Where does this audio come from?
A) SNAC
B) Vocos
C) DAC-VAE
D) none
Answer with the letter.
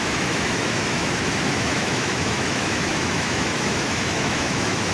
C